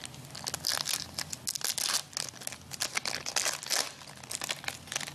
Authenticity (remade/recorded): recorded